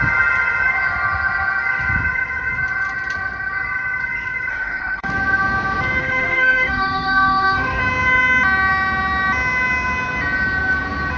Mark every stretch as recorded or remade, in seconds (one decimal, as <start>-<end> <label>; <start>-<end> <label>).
0.0-4.5 recorded; 4.5-5.1 remade; 5.1-6.0 recorded; 6.0-7.8 remade; 7.8-11.2 recorded

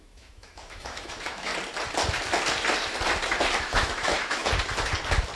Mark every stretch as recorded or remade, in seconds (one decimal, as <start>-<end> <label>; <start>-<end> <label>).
0.0-1.5 remade; 1.5-3.6 recorded; 3.6-4.4 remade; 4.4-5.4 recorded

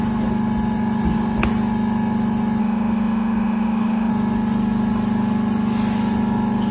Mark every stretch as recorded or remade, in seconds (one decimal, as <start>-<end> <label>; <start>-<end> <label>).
0.0-2.6 recorded; 2.6-4.1 remade; 4.1-6.7 recorded

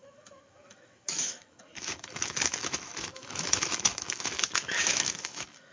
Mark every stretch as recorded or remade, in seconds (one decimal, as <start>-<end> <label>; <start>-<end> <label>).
0.0-5.7 remade

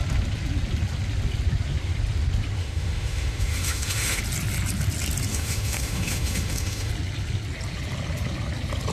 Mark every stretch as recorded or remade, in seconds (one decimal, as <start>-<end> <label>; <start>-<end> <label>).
0.0-2.6 recorded; 2.6-4.2 remade; 4.2-5.3 recorded; 5.3-6.9 remade; 6.9-8.9 recorded

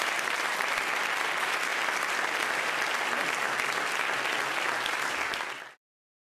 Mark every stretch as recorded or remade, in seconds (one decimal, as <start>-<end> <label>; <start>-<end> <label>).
0.0-6.4 recorded